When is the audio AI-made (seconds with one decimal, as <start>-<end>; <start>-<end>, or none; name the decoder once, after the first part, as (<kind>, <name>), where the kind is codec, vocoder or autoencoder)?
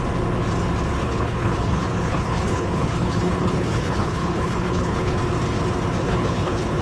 1.0-5.1 (codec, HILCodec); 6.0-6.8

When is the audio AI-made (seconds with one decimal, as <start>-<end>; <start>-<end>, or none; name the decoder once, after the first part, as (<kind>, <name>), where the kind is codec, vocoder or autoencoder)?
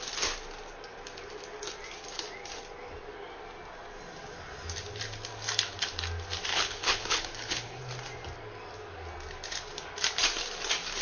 6.5-7.8 (codec, HILCodec)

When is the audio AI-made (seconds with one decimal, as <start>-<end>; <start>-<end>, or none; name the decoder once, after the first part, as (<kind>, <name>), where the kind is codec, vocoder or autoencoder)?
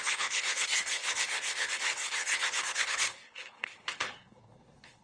0.0-5.0 (codec, HILCodec)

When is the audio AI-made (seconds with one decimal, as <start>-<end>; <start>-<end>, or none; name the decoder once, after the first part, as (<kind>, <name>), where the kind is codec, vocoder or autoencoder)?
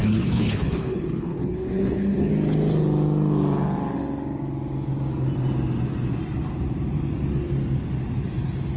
0.0-2.3 (codec, HILCodec)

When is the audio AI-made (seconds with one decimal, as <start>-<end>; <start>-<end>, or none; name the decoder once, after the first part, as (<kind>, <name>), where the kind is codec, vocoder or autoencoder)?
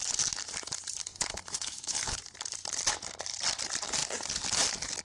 1.3-2.2 (codec, HILCodec)